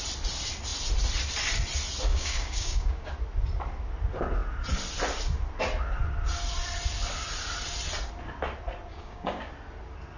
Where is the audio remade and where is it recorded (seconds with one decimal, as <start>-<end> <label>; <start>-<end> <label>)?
0.0-2.1 recorded; 2.1-3.1 remade; 3.1-8.9 recorded; 8.9-9.5 remade; 9.5-10.2 recorded